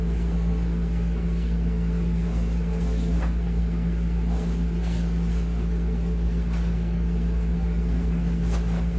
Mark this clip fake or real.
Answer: fake